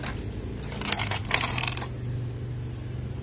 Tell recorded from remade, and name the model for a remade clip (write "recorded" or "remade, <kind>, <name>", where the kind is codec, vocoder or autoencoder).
recorded